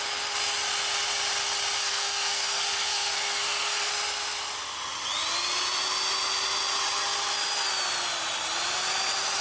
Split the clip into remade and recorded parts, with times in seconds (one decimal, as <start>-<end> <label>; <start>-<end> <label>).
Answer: 0.0-1.8 recorded; 1.8-3.9 remade; 3.9-9.4 recorded